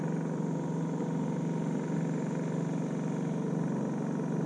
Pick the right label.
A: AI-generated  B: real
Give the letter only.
B